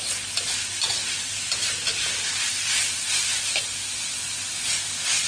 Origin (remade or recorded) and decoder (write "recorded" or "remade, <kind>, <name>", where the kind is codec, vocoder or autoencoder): recorded